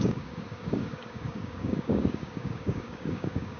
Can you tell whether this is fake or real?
fake